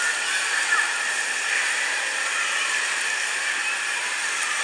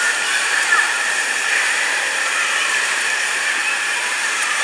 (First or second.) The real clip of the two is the first